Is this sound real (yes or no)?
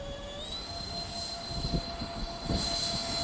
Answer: yes